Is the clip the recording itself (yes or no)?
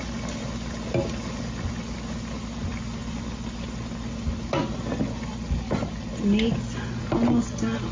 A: yes